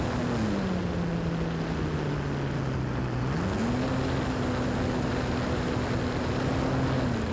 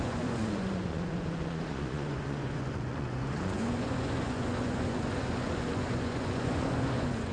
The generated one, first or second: second